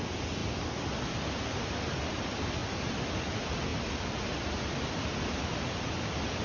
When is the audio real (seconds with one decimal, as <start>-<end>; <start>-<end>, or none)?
0.0-6.4